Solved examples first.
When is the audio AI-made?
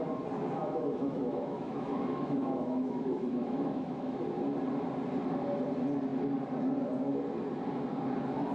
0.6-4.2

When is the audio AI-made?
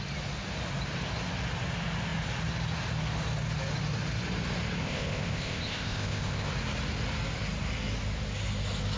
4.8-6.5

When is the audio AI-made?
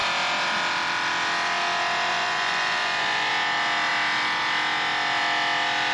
2.1-3.3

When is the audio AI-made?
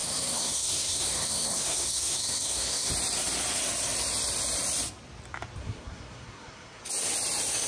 0.0-2.9; 5.6-6.8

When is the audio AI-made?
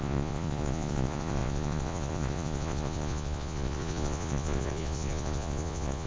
0.0-6.1